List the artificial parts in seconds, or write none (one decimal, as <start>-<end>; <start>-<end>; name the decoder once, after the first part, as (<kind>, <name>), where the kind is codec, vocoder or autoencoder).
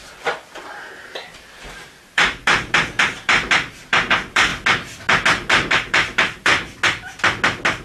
0.0-4.5 (vocoder, BigVGAN v2); 5.5-6.5